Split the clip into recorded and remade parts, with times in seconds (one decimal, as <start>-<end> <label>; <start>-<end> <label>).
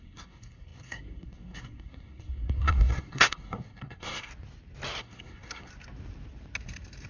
0.0-4.3 remade; 4.3-5.0 recorded; 5.0-5.7 remade; 5.7-7.1 recorded